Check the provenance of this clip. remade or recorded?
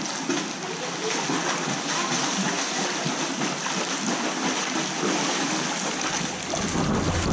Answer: recorded